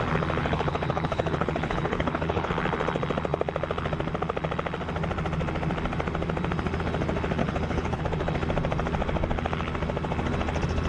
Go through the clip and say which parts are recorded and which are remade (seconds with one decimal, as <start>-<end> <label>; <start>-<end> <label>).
0.0-0.4 recorded; 0.4-2.5 remade; 2.5-7.4 recorded; 7.4-8.0 remade; 8.0-10.9 recorded